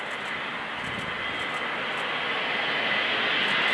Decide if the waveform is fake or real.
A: real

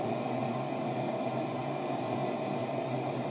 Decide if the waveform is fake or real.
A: real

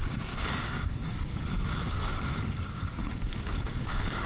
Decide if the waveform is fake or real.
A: fake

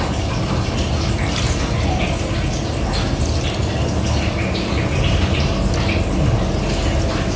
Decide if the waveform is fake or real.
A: real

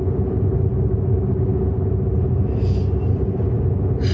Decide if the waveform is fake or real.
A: real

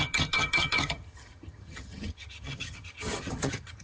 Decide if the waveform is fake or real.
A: fake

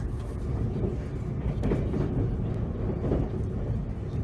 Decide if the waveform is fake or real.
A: real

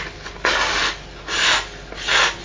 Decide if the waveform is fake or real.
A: real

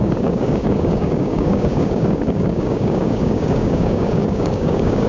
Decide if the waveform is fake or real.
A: fake